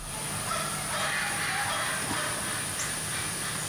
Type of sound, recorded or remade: recorded